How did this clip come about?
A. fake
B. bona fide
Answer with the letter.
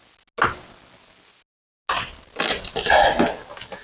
B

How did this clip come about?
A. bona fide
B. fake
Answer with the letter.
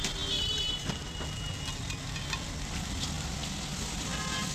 A